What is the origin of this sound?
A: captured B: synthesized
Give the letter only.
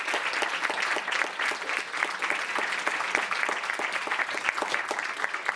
A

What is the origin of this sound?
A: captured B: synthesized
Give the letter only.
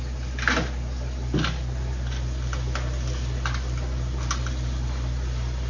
A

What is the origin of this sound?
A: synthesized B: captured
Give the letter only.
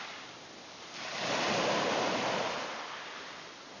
B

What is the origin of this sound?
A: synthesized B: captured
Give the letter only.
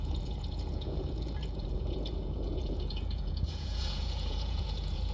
A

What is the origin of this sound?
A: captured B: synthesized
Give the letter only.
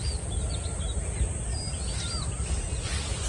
A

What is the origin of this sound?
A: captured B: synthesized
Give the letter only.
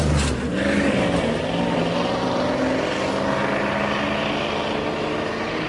A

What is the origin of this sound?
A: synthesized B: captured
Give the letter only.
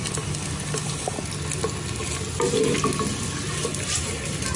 B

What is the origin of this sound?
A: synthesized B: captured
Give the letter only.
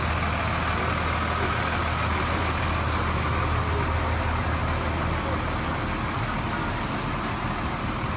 B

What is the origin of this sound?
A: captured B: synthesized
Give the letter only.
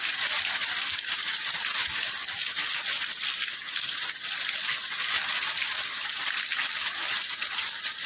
A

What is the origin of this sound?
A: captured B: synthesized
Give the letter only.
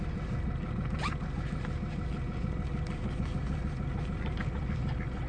A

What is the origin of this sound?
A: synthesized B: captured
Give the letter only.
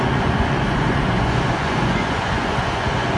A